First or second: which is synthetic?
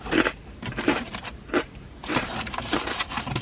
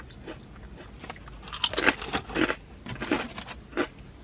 first